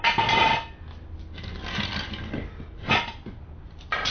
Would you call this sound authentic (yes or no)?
yes